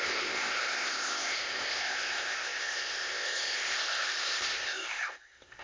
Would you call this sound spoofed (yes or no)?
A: yes